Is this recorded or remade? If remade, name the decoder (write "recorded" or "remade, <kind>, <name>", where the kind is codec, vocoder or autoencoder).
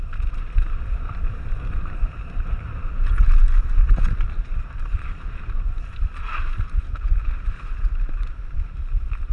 remade, vocoder, BigVGAN v2